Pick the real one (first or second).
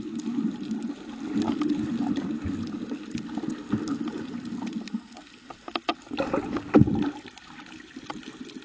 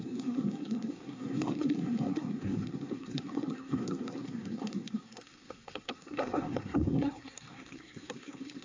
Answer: first